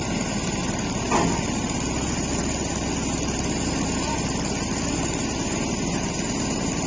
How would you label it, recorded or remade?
recorded